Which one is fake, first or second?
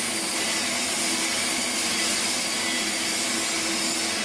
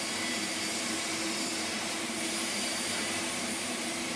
second